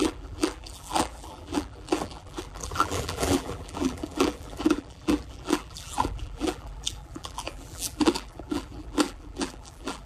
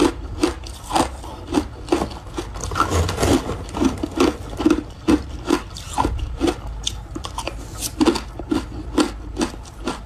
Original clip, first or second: second